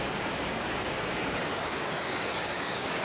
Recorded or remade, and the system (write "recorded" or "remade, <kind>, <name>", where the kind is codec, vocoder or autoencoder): remade, codec, DAC